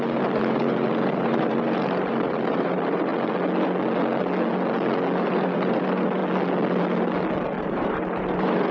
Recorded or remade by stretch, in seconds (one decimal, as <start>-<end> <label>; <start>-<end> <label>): 0.0-3.1 remade; 3.1-5.2 recorded; 5.2-6.2 remade; 6.2-7.6 recorded; 7.6-8.7 remade